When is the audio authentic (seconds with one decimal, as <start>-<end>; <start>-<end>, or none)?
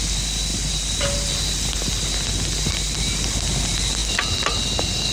0.0-5.1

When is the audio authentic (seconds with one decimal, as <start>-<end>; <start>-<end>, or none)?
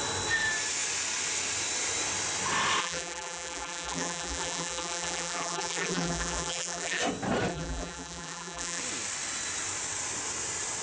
0.0-2.8; 7.0-7.5; 8.8-10.8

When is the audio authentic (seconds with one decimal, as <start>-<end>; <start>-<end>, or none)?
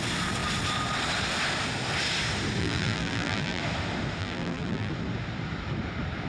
0.0-2.6; 3.6-4.2; 4.9-6.3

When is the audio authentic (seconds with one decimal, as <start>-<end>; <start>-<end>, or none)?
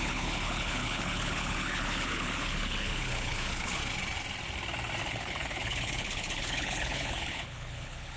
3.8-5.0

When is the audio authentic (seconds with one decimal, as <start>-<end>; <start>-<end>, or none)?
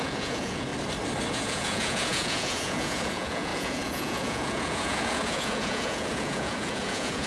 0.7-1.3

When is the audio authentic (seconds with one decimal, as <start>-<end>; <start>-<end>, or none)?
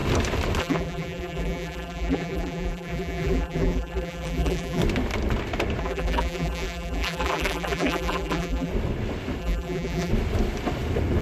0.0-0.6; 4.8-5.8; 8.7-9.4; 10.1-11.2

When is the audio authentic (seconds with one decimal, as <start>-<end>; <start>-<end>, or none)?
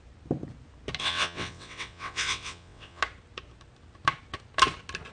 0.0-1.0; 3.0-5.1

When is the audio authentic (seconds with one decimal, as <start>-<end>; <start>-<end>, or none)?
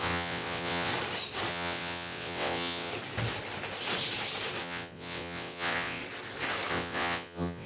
0.9-1.5; 2.9-4.6; 6.0-6.7